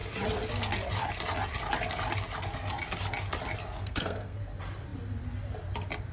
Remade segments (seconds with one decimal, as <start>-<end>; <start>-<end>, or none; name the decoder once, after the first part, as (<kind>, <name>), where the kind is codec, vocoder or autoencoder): 3.8-4.4 (codec, SNAC)